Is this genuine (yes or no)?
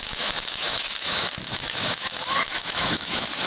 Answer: no